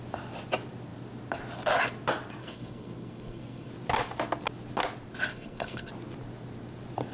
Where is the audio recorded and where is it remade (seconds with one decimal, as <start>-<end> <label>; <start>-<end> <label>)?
0.0-2.4 recorded; 2.4-3.7 remade; 3.7-5.3 recorded; 5.3-5.9 remade; 5.9-7.1 recorded